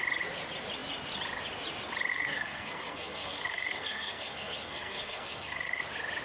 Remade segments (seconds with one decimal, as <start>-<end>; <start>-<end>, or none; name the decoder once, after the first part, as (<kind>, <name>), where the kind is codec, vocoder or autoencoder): 2.1-5.8 (codec, SNAC)